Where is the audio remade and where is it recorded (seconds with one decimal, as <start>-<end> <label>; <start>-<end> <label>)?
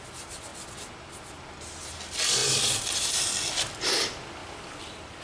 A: 0.0-5.2 recorded